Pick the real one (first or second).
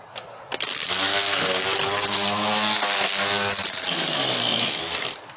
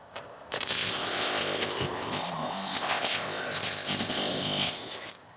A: first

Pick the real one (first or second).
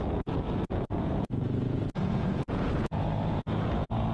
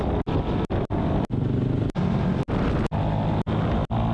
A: second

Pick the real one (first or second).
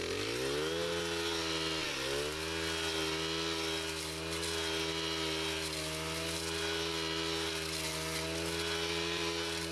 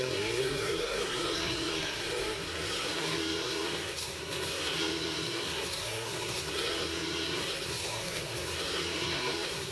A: first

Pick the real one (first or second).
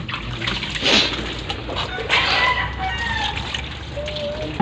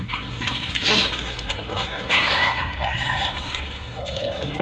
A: first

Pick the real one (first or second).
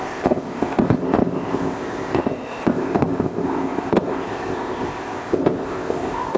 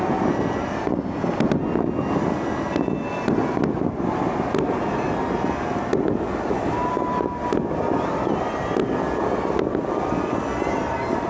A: second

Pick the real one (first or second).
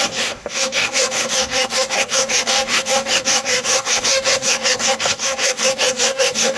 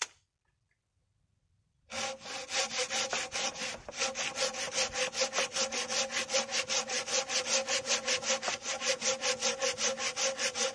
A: second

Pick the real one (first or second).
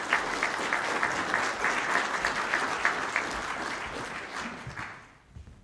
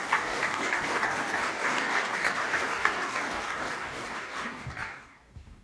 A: first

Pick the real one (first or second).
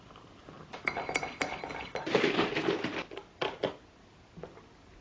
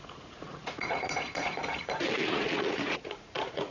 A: first